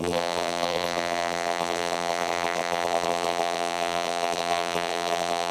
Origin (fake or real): fake